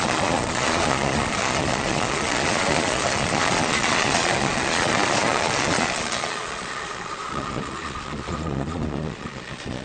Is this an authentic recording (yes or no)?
no